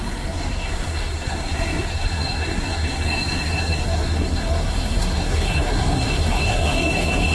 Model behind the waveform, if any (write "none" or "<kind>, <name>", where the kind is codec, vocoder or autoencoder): codec, SNAC